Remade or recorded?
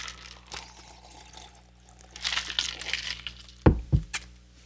recorded